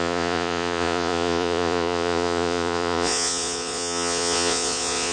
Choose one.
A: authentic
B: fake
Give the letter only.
B